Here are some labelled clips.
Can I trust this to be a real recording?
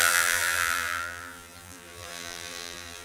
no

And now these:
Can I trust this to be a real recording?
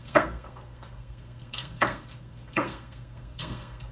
no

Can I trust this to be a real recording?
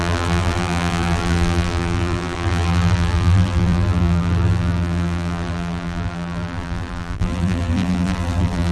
no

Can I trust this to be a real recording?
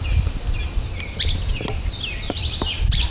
yes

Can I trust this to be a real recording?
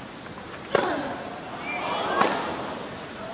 yes